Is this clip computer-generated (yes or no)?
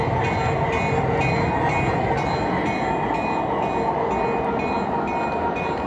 no